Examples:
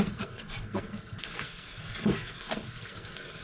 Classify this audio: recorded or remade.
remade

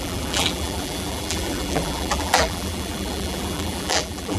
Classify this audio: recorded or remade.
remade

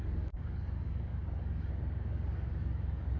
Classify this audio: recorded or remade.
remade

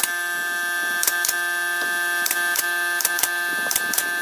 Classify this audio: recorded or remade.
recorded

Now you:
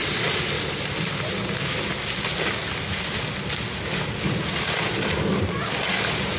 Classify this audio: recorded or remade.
recorded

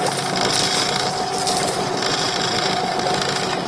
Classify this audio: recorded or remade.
recorded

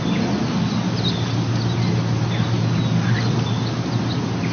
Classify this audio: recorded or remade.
recorded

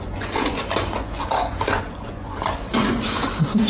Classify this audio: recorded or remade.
remade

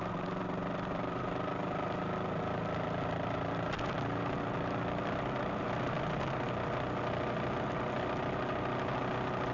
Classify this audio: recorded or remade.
recorded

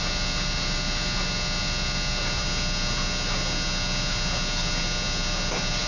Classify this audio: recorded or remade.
recorded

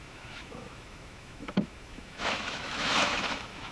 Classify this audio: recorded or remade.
remade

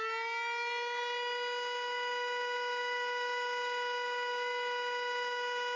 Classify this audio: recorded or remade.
recorded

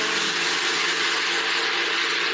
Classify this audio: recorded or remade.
recorded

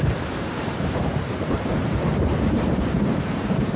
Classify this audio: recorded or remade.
remade